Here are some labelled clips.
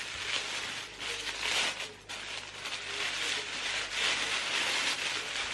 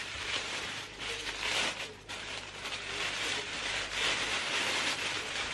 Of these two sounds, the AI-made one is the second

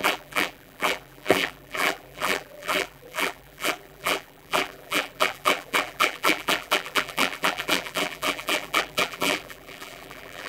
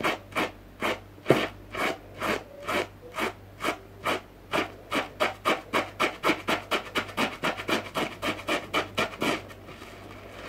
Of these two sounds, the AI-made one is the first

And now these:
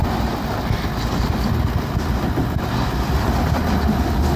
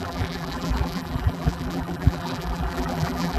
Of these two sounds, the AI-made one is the second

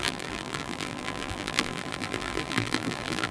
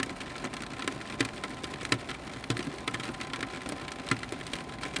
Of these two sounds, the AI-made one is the first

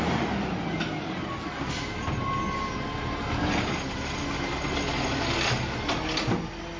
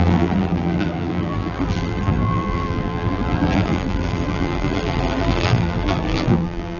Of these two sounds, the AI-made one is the second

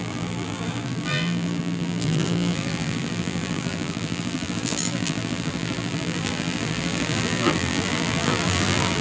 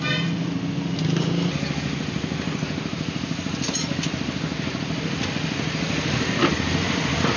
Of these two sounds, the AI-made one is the first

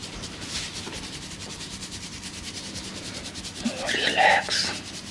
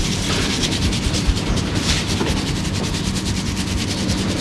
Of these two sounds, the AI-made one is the first